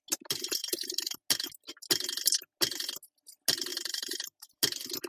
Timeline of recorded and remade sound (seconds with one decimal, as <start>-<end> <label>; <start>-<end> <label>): 0.0-0.6 recorded; 0.6-1.2 remade; 1.2-3.7 recorded; 3.7-4.6 remade; 4.6-5.1 recorded